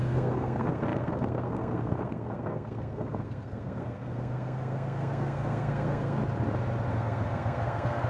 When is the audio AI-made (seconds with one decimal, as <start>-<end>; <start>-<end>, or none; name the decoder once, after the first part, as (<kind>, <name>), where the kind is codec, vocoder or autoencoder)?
0.0-6.2 (codec, SNAC); 6.9-8.1